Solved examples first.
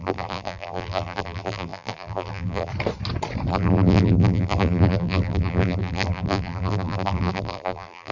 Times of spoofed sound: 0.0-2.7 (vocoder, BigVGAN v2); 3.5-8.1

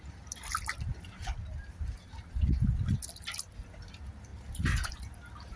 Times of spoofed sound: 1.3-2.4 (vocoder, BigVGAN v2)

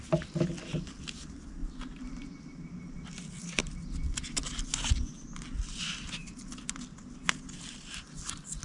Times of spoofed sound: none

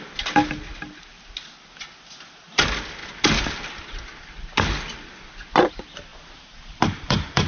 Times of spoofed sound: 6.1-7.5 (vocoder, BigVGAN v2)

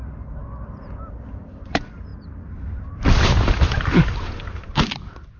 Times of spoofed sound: 0.0-0.4 (vocoder, BigVGAN v2); 1.3-5.4

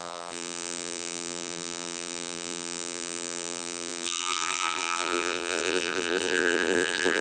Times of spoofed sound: 0.0-7.2 (vocoder, BigVGAN v2)

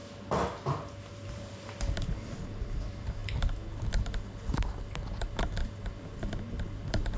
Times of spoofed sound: 1.1-3.2 (vocoder, BigVGAN v2); 6.2-7.2

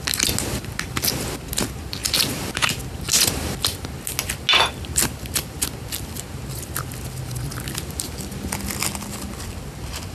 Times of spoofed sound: 2.0-2.7 (vocoder, BigVGAN v2)